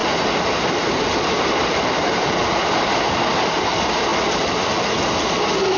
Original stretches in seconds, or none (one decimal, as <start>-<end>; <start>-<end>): 3.5-5.8